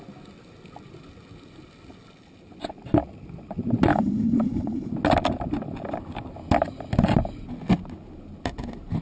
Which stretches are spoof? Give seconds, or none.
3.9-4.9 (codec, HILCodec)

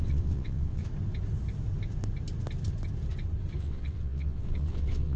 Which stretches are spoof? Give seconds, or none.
0.0-0.8 (vocoder, WaveNeXt); 3.6-5.2

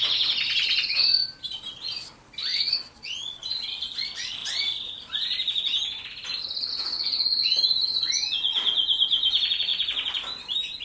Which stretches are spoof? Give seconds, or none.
2.5-3.4 (vocoder, Vocos)